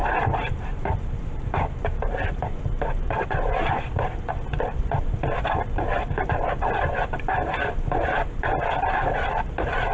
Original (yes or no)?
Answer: no